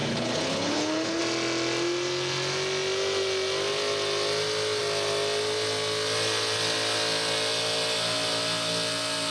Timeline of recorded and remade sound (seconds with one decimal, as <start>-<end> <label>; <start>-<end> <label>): 0.0-1.2 remade; 1.2-9.3 recorded